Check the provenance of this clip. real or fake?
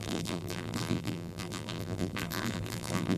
fake